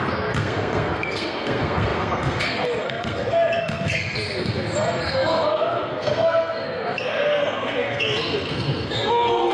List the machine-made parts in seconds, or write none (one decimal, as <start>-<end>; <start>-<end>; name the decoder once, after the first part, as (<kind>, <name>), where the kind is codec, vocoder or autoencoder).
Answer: 0.0-9.5 (codec, SNAC)